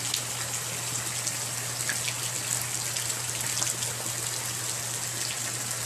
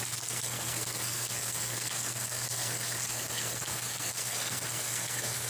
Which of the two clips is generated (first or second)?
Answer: second